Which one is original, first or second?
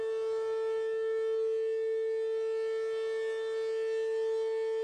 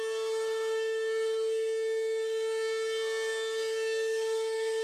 first